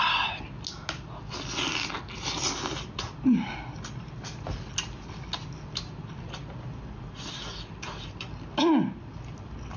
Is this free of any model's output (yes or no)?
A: yes